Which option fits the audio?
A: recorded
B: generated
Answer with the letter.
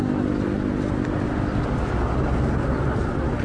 A